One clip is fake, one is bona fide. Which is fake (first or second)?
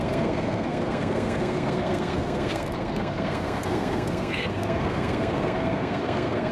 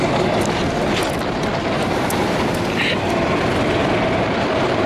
first